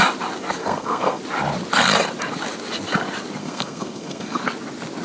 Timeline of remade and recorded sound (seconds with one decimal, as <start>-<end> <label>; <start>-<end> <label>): 0.0-0.6 recorded; 0.6-1.2 remade; 1.2-3.4 recorded; 3.4-4.4 remade; 4.4-5.0 recorded